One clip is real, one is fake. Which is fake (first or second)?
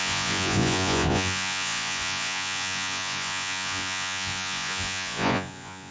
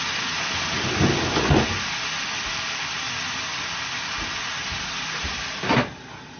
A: first